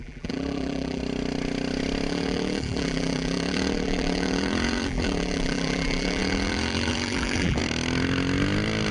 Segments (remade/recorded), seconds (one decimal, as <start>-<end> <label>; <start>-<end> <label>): 0.0-1.0 remade; 1.0-2.1 recorded; 2.1-7.6 remade; 7.6-8.9 recorded